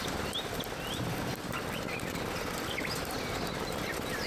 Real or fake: real